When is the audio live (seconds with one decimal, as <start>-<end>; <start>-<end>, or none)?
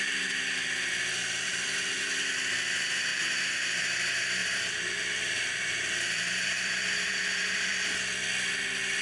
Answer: 0.0-1.2; 2.0-3.1; 3.8-4.4; 7.7-9.0